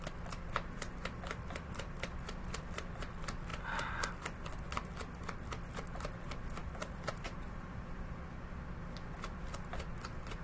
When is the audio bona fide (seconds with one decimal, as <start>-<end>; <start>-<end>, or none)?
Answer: 0.0-10.4